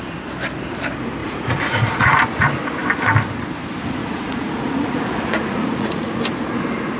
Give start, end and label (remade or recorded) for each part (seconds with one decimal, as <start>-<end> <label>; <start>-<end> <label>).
0.0-1.2 recorded; 1.2-2.2 remade; 2.2-4.0 recorded; 4.0-6.1 remade; 6.1-7.0 recorded